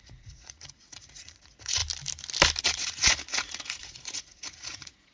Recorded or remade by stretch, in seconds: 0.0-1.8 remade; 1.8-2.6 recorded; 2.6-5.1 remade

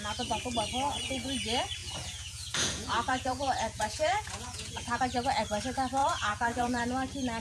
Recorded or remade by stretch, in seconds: 0.0-1.8 recorded; 1.8-5.0 remade; 5.0-6.0 recorded; 6.0-6.8 remade; 6.8-7.4 recorded